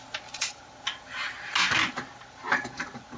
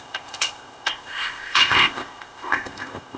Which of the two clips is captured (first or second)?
first